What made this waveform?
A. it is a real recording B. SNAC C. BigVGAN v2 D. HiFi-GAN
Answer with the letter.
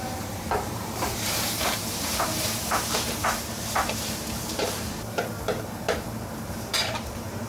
C